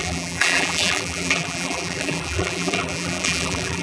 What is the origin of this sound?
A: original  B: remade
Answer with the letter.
B